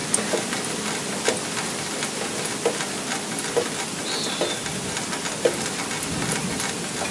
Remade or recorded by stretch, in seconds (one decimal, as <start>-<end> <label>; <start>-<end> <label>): 0.0-7.1 recorded